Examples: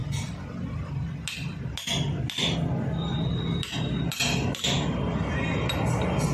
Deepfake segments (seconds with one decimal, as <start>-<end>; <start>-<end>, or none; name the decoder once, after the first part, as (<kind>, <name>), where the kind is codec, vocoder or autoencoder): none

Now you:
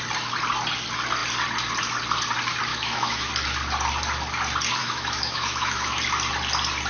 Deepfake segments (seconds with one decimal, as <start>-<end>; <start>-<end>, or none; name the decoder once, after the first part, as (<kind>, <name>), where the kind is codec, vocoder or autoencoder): 2.7-3.3 (autoencoder, DAC-VAE); 4.8-6.0

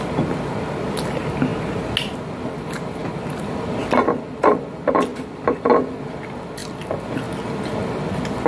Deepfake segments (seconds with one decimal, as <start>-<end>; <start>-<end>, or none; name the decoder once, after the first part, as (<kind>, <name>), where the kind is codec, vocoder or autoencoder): none

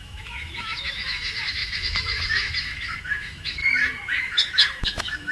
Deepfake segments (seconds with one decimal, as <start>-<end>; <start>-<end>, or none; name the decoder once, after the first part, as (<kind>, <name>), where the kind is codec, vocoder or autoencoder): 0.0-3.6 (autoencoder, DAC-VAE); 4.2-5.3